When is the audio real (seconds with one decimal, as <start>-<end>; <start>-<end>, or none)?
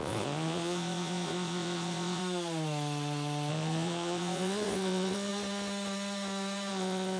2.2-3.5; 5.3-6.7